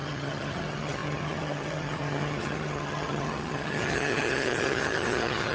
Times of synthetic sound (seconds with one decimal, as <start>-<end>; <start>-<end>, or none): 0.0-5.5